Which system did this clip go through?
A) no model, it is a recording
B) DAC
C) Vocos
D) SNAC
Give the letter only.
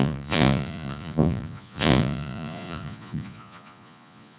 C